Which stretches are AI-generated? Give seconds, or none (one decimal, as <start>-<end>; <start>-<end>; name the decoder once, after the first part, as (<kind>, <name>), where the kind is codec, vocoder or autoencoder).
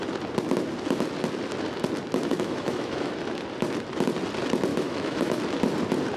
2.3-3.1 (autoencoder, DAC-VAE); 4.7-5.4